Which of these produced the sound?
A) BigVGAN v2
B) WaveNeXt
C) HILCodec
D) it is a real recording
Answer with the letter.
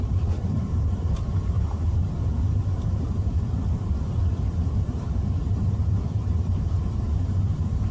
A